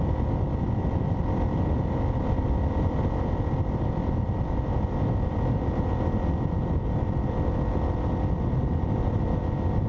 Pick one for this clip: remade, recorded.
recorded